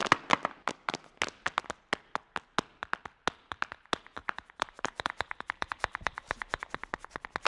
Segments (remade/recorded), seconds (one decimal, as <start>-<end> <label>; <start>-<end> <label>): 0.0-4.2 recorded; 4.2-6.6 remade; 6.6-7.5 recorded